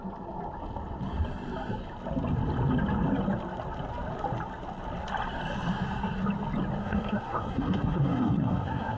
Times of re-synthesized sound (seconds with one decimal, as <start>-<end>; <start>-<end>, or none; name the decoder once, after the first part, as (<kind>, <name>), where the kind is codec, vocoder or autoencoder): 6.8-9.0 (codec, SNAC)